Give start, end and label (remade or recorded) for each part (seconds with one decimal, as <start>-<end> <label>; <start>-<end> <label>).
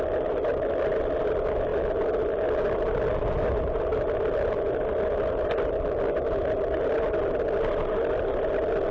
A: 0.0-8.9 recorded